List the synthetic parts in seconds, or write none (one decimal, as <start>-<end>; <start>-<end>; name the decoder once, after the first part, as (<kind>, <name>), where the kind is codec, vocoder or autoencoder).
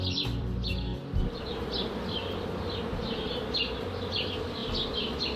0.0-0.9 (vocoder, BigVGAN v2); 4.1-4.6